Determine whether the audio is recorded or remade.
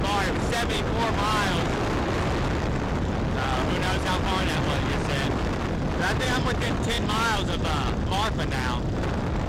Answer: recorded